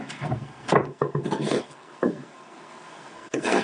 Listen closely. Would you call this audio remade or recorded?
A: remade